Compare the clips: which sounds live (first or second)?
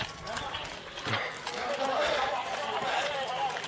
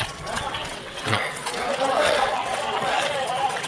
first